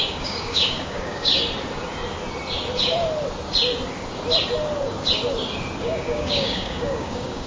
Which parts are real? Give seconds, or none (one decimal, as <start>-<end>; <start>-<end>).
1.3-5.8

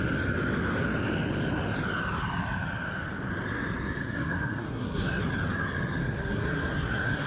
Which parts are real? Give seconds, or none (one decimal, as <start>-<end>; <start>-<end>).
0.0-4.0; 5.2-6.0